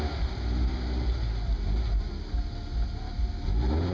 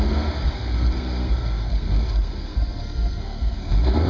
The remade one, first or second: second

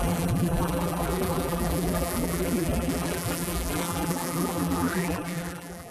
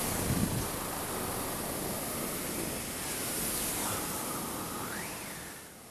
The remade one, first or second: first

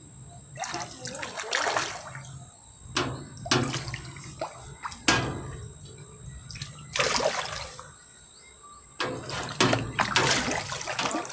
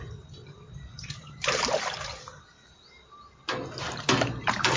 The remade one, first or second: second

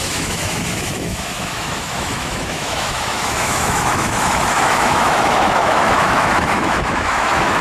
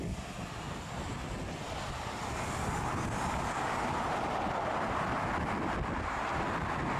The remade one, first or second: first